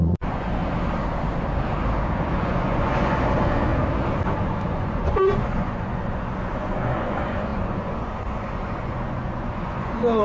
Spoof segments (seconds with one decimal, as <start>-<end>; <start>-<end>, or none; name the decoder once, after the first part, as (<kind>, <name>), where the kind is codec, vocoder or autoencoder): 0.0-0.6 (vocoder, Vocos); 2.1-3.7; 4.4-10.2